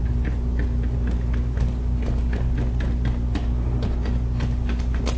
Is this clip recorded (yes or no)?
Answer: yes